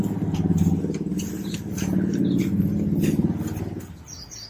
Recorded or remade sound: recorded